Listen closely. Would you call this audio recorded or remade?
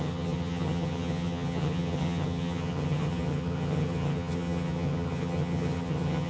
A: remade